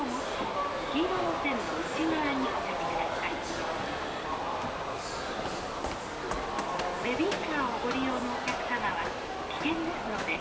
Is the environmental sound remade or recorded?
recorded